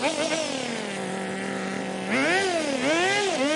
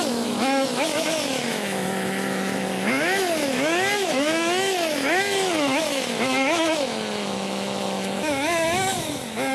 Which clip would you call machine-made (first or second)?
second